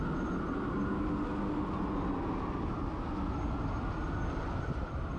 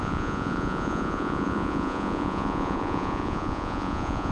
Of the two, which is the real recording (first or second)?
first